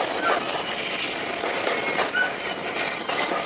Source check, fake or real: real